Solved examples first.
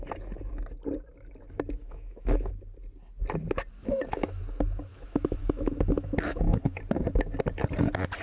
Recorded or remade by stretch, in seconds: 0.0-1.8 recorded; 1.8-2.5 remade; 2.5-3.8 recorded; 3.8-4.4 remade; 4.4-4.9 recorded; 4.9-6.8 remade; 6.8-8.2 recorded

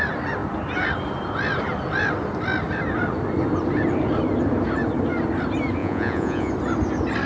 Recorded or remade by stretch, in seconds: 0.0-5.8 recorded; 5.8-6.5 remade; 6.5-7.3 recorded

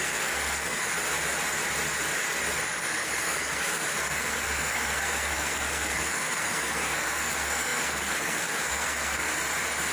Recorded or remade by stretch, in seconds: 0.0-0.9 remade; 0.9-2.8 recorded; 2.8-9.3 remade; 9.3-9.9 recorded

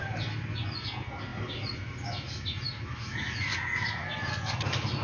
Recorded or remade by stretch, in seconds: 0.0-5.0 recorded

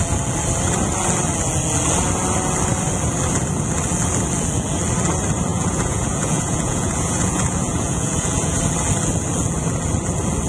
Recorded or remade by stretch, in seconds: 0.0-5.5 recorded; 5.5-8.6 remade; 8.6-10.5 recorded

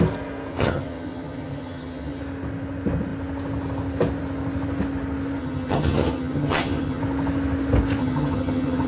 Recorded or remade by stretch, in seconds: 0.0-0.5 recorded; 0.5-2.2 remade; 2.2-5.4 recorded; 5.4-7.0 remade; 7.0-8.0 recorded; 8.0-8.9 remade

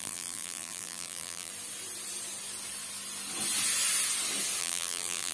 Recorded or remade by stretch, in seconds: 0.0-1.5 remade; 1.5-4.6 recorded; 4.6-5.3 remade